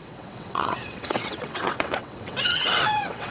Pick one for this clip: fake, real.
fake